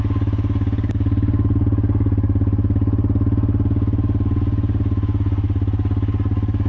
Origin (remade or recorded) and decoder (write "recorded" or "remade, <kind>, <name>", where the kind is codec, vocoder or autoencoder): recorded